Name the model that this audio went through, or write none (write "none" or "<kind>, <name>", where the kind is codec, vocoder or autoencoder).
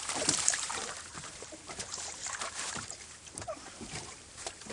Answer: vocoder, BigVGAN v2